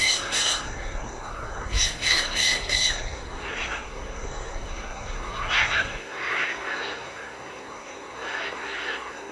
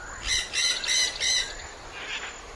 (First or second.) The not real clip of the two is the first